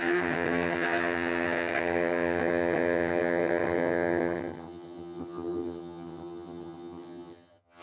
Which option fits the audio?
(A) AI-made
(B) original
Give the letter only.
A